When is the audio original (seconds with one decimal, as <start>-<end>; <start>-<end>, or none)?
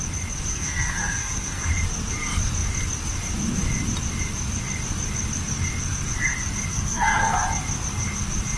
0.0-0.5; 1.7-6.7; 7.4-8.6